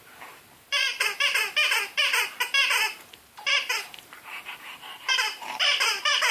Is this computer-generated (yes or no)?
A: yes